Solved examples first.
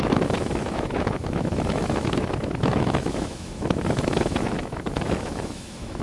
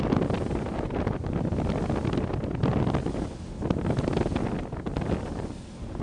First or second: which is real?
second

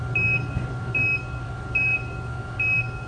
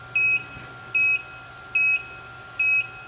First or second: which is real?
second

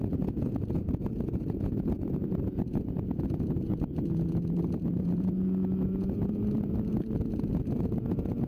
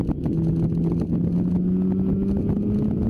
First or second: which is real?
second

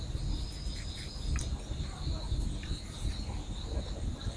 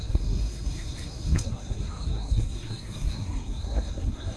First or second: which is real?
first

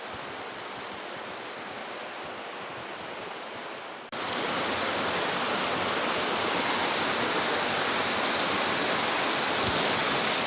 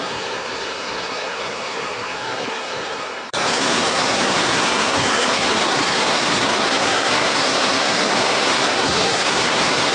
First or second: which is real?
first